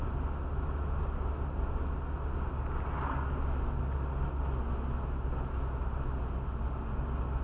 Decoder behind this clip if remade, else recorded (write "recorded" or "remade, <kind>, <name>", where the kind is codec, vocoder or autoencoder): recorded